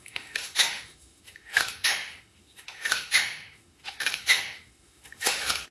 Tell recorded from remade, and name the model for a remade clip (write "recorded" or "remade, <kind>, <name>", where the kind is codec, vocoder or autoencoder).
remade, autoencoder, DAC-VAE